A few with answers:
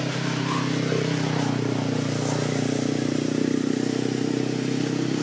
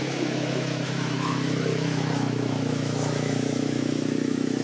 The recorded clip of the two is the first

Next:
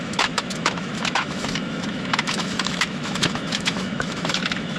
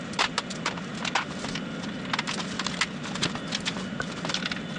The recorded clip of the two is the second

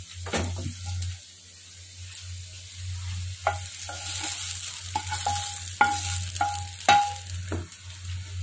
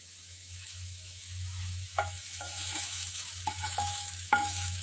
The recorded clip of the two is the first